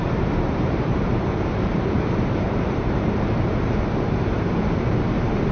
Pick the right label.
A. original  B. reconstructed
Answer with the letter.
B